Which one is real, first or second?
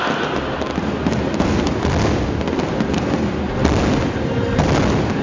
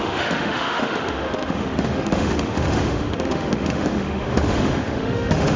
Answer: first